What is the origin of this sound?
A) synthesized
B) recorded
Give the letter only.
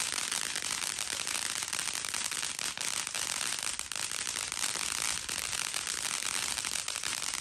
B